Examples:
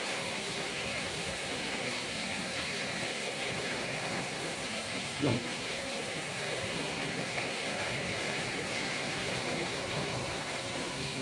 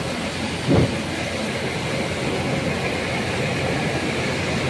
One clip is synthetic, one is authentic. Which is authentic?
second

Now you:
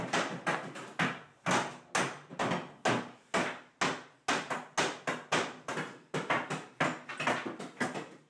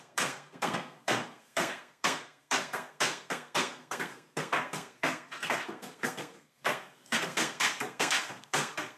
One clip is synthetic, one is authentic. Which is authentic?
first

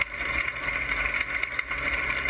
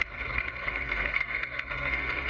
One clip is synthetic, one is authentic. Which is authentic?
first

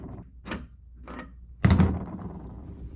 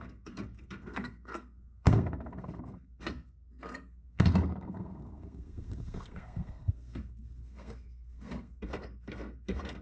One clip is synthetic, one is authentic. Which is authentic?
first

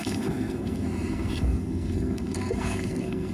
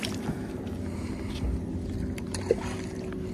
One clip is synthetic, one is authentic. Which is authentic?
second